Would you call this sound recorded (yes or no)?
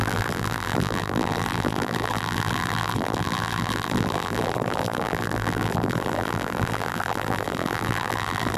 no